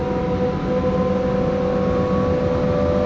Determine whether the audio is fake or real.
real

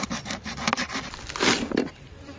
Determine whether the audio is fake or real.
real